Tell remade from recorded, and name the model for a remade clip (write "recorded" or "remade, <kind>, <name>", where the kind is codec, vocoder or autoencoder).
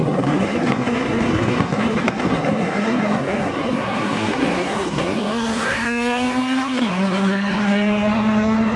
remade, codec, SNAC